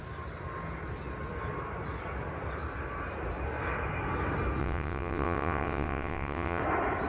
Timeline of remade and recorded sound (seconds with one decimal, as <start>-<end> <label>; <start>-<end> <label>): 0.0-4.6 recorded; 4.6-6.6 remade; 6.6-7.1 recorded